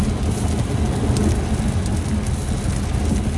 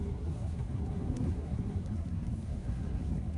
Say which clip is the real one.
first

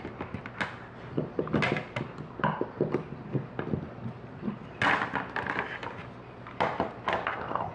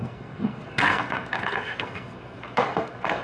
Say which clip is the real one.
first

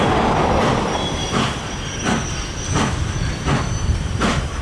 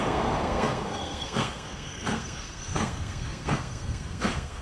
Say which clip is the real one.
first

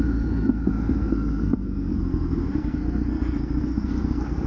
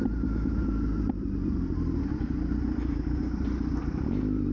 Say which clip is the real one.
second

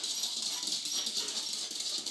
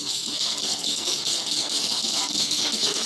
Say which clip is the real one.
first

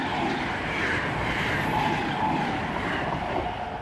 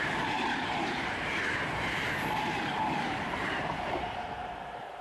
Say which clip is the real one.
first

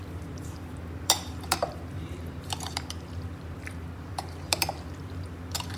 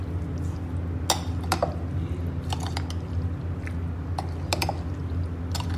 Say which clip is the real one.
second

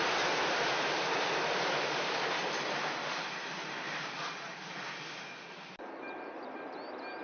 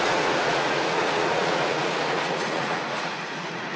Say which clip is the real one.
first